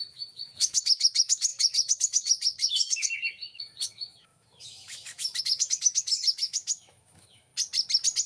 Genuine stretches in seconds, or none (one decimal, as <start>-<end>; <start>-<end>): 7.5-8.3